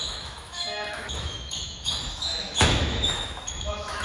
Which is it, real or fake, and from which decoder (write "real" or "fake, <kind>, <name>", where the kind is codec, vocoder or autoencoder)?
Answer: fake, autoencoder, DAC-VAE